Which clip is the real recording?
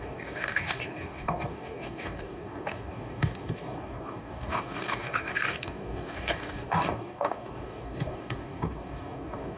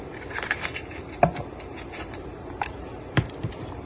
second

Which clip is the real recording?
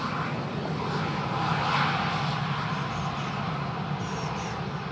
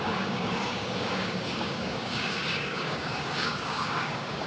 first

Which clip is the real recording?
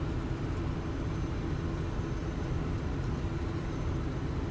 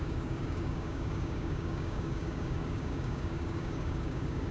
first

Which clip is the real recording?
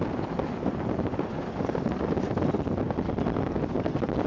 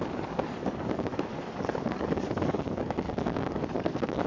first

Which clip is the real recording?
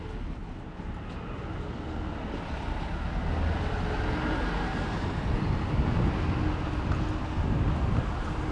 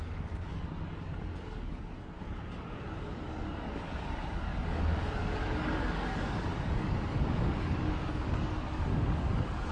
first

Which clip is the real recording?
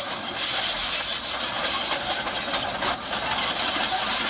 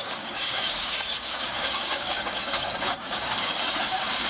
first